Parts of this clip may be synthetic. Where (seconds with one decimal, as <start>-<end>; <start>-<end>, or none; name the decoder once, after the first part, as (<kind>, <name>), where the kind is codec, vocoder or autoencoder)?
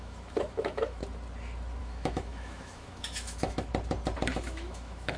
0.0-1.0 (autoencoder, DAC-VAE); 1.8-3.7; 4.3-5.2